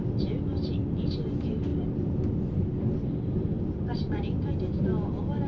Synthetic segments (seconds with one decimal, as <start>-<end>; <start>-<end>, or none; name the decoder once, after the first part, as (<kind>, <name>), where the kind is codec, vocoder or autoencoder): 1.7-4.5 (vocoder, BigVGAN v2)